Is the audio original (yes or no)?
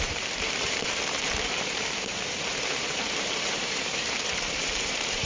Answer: no